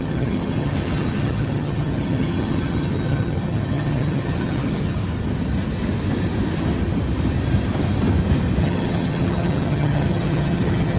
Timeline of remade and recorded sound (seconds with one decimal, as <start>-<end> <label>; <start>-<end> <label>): 0.0-5.0 remade; 5.0-8.6 recorded; 8.6-11.0 remade